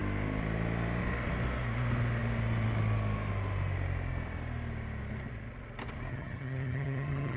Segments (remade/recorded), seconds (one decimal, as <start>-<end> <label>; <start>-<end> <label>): 0.0-6.1 recorded; 6.1-7.4 remade